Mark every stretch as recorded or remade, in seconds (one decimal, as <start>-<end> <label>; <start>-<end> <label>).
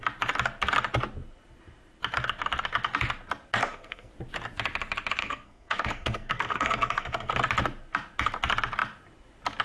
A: 0.0-3.6 recorded; 3.6-4.1 remade; 4.1-5.2 recorded; 5.2-7.3 remade; 7.3-9.6 recorded